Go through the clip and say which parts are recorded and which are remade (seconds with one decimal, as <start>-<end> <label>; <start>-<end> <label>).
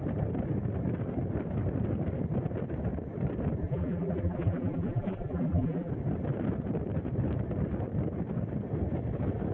0.0-3.6 recorded; 3.6-5.9 remade; 5.9-9.5 recorded